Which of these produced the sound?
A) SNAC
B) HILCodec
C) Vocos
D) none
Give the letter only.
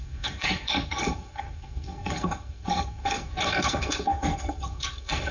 A